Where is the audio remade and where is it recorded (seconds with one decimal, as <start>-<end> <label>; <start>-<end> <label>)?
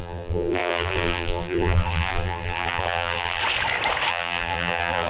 0.0-3.4 remade; 3.4-4.1 recorded; 4.1-5.1 remade